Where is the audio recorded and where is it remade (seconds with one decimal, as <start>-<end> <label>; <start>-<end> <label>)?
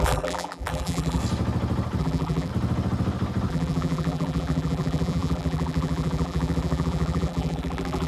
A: 0.0-1.2 remade; 1.2-2.0 recorded; 2.0-2.5 remade; 2.5-3.5 recorded; 3.5-8.1 remade